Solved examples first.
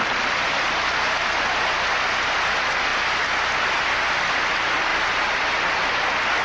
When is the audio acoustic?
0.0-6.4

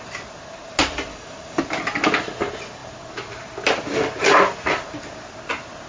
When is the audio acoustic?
0.0-1.1; 1.6-5.9

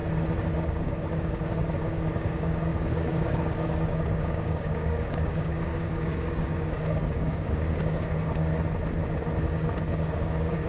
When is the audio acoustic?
0.0-0.8; 8.5-9.4

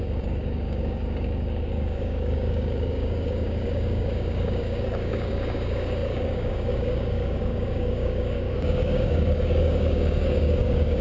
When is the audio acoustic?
none

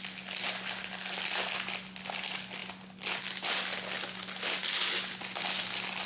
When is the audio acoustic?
0.0-6.1

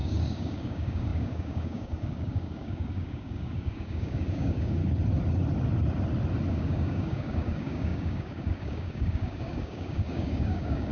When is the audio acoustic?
4.8-6.5

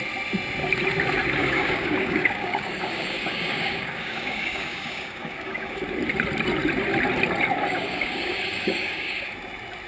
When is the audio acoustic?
0.0-1.4; 5.8-7.7; 9.3-9.9

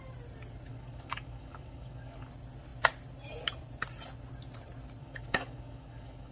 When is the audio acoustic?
0.0-0.7; 2.3-5.0